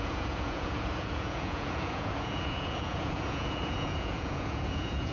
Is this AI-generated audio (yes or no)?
yes